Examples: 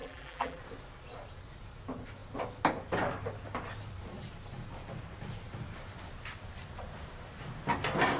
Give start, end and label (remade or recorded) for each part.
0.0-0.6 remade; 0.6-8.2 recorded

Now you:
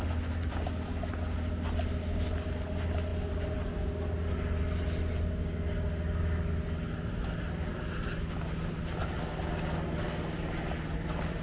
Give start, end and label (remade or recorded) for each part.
0.0-11.4 recorded

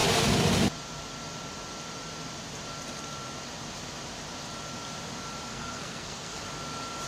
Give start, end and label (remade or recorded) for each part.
0.0-5.5 recorded; 5.5-6.4 remade; 6.4-7.1 recorded

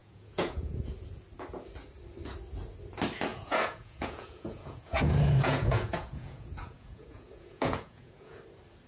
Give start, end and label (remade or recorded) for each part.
0.0-0.8 remade; 0.8-3.3 recorded; 3.3-8.4 remade; 8.4-8.9 recorded

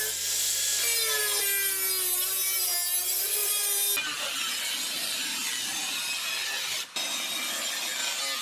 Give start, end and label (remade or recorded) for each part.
0.0-8.4 recorded